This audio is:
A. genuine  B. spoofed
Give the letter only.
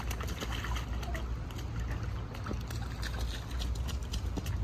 A